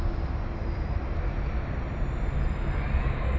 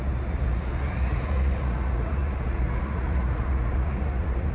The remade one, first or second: second